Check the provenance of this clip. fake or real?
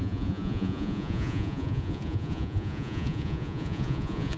fake